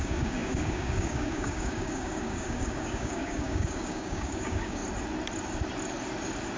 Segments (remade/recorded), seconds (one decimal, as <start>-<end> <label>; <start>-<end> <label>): 0.0-4.8 remade; 4.8-6.6 recorded